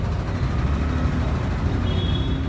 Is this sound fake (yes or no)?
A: no